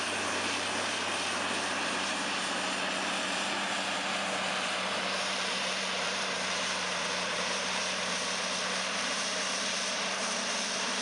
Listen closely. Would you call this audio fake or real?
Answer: fake